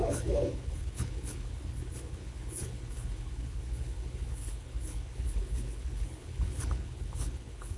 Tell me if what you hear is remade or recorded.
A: remade